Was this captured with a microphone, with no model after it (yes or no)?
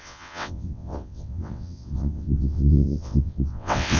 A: no